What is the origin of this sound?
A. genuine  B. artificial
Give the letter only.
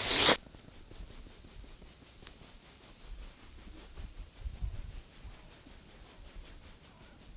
A